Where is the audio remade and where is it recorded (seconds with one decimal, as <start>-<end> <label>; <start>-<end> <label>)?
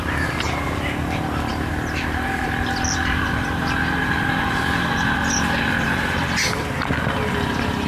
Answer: 0.0-1.5 recorded; 1.5-6.2 remade; 6.2-7.9 recorded